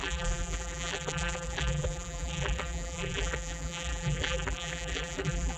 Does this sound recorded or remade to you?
remade